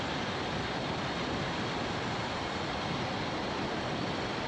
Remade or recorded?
remade